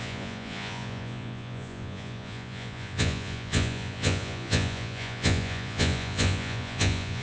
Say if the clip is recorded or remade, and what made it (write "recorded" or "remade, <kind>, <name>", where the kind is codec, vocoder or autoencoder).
remade, vocoder, Vocos